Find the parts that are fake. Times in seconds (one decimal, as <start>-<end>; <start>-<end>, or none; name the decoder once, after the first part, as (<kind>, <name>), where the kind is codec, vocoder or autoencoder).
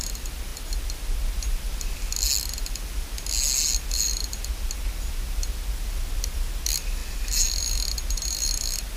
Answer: none